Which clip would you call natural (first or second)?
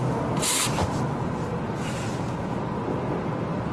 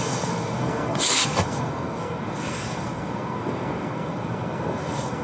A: first